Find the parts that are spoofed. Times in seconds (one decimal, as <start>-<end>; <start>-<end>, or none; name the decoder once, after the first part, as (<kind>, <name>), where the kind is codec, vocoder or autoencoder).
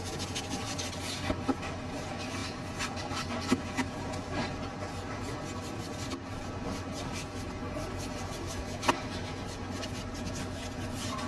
none